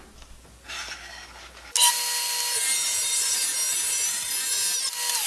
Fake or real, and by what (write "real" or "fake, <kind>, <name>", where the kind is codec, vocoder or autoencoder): real